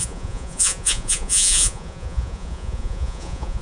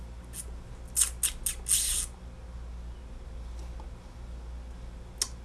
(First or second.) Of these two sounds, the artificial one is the first